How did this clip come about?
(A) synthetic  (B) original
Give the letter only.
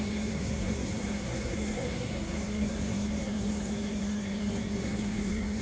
A